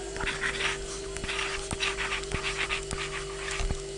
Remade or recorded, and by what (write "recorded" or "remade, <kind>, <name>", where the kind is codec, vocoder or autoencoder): recorded